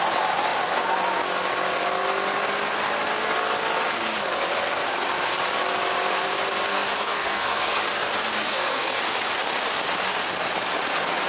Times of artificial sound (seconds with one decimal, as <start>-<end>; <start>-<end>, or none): 6.7-7.8; 8.4-9.0